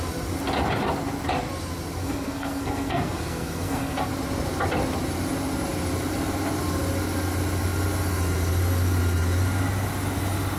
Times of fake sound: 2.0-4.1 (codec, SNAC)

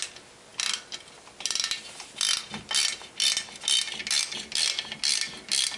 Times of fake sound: none

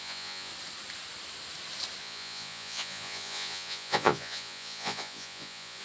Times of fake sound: 0.0-0.5 (vocoder, Vocos); 2.0-5.8

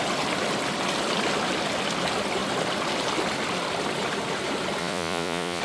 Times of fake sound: 4.8-5.6 (vocoder, Vocos)

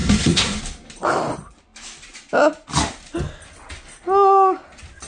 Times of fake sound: 0.0-0.6 (codec, SNAC)

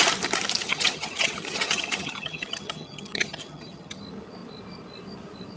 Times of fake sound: 0.6-4.0 (vocoder, HiFi-GAN)

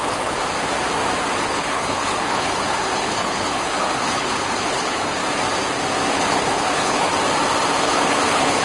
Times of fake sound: 0.0-0.4 (codec, HILCodec); 1.4-5.2; 6.1-7.1; 7.8-8.6